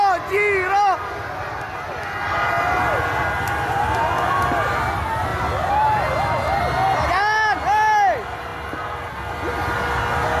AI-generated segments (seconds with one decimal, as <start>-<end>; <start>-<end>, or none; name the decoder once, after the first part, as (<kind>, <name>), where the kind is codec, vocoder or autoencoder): none